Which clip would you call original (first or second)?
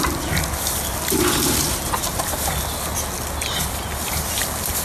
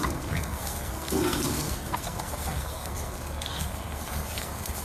first